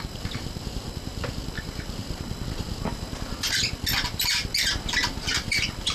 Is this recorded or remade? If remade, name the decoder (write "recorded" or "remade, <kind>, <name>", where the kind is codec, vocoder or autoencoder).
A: recorded